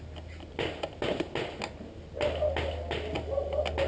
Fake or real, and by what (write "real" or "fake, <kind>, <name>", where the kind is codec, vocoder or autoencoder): real